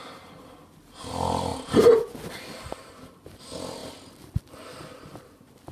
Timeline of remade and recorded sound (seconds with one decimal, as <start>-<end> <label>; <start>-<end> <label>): 0.0-5.7 recorded

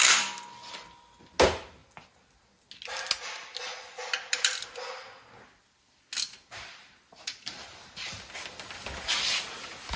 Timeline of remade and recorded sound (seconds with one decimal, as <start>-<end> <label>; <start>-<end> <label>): 0.0-10.0 recorded

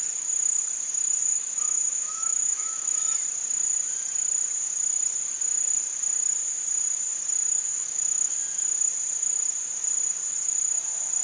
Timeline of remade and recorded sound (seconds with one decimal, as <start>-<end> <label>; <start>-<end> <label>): 0.0-1.2 recorded; 1.2-3.0 remade; 3.0-7.8 recorded; 7.8-8.4 remade; 8.4-11.2 recorded